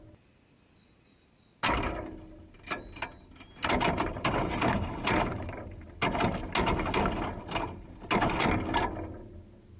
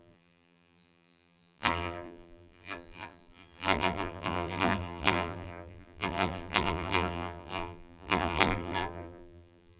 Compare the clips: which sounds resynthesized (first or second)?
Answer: second